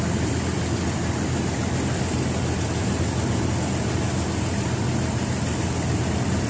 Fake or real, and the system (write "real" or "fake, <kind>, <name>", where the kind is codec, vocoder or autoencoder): real